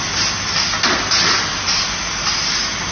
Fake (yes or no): no